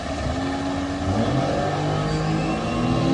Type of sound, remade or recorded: recorded